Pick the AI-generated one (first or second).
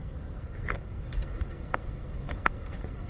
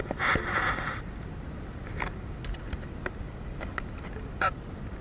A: first